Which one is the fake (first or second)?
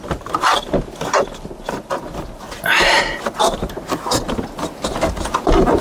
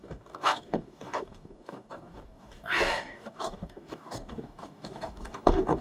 second